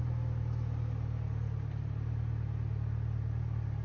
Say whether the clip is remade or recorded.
recorded